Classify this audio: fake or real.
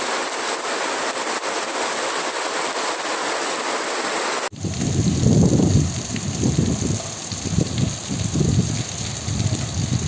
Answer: real